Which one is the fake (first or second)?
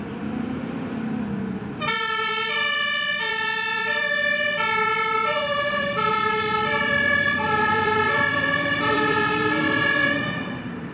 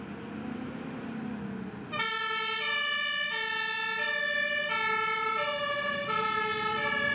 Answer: first